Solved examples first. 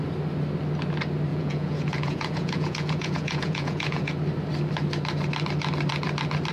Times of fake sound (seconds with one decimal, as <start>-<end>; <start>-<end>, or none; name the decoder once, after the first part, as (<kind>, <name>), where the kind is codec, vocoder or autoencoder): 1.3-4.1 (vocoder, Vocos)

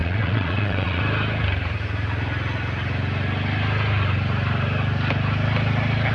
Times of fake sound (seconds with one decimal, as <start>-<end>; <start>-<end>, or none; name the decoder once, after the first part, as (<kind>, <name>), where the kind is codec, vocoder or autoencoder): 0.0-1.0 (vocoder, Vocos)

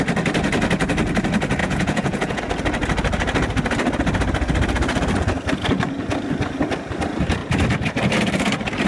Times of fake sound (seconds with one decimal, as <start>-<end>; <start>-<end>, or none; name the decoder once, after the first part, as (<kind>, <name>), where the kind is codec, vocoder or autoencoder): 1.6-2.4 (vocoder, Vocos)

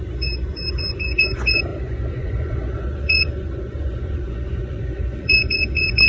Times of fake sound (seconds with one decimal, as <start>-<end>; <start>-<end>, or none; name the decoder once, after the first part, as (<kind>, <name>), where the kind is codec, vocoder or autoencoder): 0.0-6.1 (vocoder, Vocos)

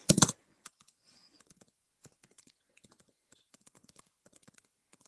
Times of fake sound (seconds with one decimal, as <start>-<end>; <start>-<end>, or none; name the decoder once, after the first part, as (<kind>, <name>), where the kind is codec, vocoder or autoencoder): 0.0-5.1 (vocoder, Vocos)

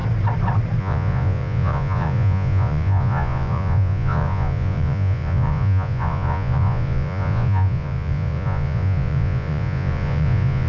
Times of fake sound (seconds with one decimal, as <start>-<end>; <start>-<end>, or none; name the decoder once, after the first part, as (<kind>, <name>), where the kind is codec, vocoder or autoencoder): 0.8-10.7 (vocoder, Vocos)

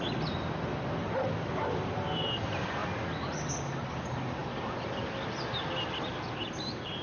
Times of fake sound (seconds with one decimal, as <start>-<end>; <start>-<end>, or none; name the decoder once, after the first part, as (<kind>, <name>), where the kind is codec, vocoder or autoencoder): none